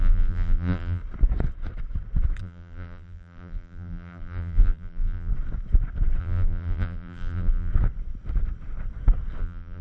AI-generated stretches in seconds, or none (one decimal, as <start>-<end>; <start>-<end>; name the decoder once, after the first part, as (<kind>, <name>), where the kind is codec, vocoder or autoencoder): 0.0-1.0 (vocoder, BigVGAN v2); 2.4-5.3; 6.2-7.7; 9.4-9.8